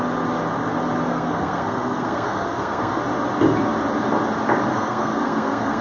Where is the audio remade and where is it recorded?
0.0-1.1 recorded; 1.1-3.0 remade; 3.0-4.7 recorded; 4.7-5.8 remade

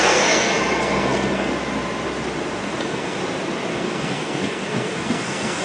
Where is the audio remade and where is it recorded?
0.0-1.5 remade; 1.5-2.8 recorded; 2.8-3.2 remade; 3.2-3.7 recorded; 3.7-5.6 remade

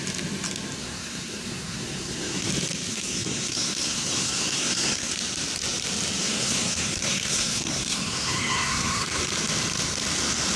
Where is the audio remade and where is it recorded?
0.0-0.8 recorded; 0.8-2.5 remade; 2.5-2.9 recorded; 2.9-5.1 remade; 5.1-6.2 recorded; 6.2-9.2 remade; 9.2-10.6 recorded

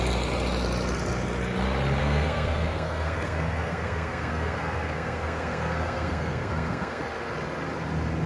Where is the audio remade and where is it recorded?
0.0-2.0 recorded; 2.0-7.0 remade; 7.0-8.3 recorded

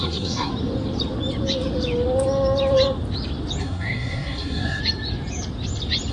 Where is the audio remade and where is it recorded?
0.0-0.5 remade; 0.5-3.6 recorded; 3.6-4.8 remade; 4.8-6.1 recorded

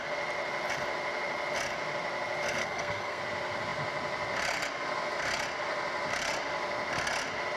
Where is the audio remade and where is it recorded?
0.0-2.6 recorded; 2.6-3.2 remade; 3.2-7.6 recorded

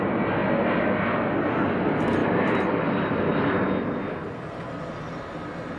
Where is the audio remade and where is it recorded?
0.0-5.8 recorded